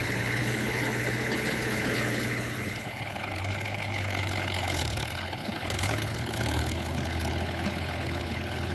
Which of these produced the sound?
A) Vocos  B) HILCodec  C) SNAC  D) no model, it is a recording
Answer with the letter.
B